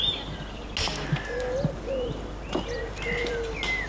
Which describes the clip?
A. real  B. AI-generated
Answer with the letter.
A